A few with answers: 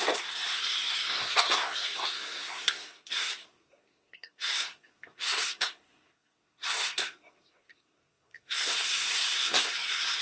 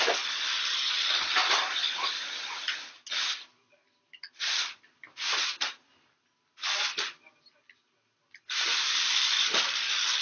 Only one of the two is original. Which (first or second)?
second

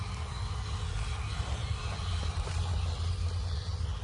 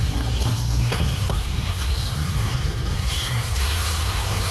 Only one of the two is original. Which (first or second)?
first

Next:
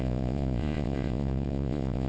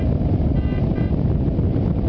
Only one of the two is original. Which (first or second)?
second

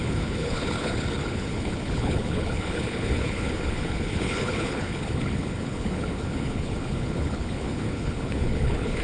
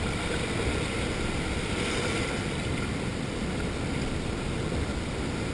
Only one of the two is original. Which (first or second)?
second